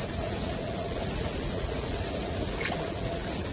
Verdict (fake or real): fake